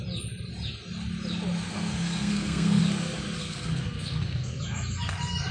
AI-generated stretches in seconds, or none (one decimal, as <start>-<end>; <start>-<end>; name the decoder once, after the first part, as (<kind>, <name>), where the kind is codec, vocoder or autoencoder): 1.7-2.8 (codec, SNAC); 3.4-4.6